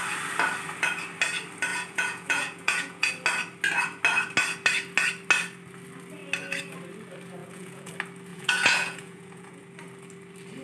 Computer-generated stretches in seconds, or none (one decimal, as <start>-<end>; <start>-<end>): 1.7-3.1; 7.4-7.9; 8.3-9.6

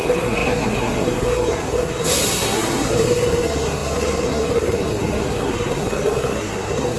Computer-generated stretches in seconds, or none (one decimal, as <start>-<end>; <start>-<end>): 0.0-7.0